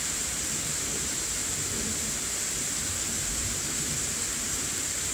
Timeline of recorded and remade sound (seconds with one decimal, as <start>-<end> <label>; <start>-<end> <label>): 0.0-1.4 remade; 1.4-3.9 recorded; 3.9-5.1 remade